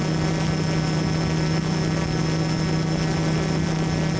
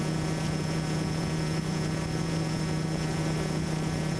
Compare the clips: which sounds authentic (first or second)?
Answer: first